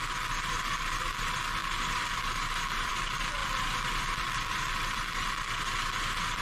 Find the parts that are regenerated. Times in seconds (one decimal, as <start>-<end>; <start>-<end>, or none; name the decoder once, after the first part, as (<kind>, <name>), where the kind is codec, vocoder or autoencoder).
3.4-5.0 (vocoder, BigVGAN v2)